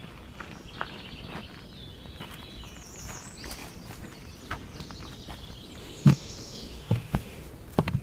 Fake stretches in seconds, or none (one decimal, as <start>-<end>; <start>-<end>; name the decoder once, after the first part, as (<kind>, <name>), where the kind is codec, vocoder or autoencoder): 5.8-7.5 (autoencoder, DAC-VAE)